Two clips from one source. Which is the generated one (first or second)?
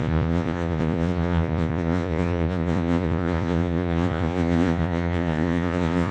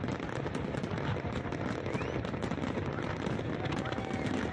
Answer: first